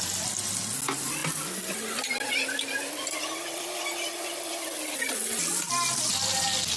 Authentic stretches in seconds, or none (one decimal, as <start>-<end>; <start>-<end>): 0.0-6.8